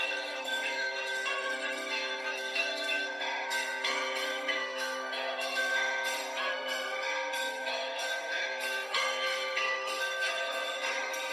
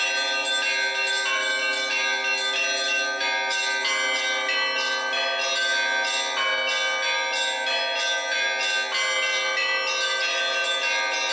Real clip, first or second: second